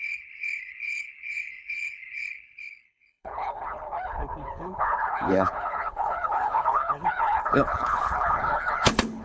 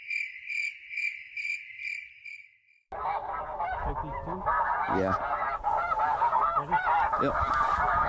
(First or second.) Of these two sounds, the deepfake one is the first